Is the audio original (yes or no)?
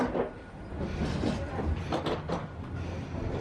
yes